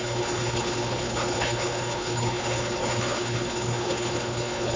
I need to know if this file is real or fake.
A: fake